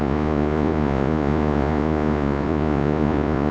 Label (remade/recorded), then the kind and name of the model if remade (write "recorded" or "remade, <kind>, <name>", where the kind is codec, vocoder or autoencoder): remade, vocoder, Vocos